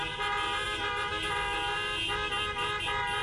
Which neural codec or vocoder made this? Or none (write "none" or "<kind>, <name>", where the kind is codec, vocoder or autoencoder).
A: none